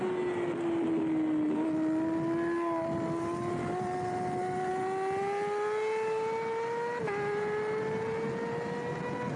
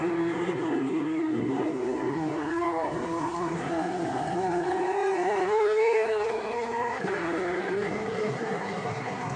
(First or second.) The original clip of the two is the first